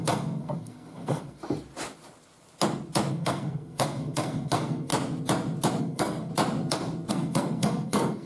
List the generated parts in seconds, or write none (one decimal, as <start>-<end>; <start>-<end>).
0.0-1.4; 3.1-4.9; 5.8-6.3; 7.1-8.3